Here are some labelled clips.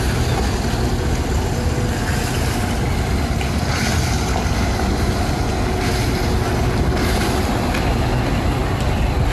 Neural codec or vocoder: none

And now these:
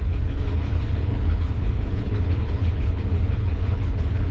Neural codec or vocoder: codec, HILCodec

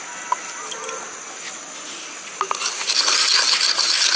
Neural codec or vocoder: none